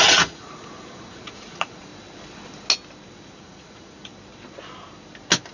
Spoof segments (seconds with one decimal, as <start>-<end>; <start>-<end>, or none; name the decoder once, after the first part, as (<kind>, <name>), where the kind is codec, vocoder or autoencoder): 0.0-1.9 (vocoder, Vocos); 3.4-4.1